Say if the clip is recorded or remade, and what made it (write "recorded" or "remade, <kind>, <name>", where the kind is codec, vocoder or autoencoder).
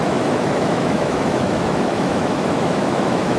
remade, autoencoder, DAC-VAE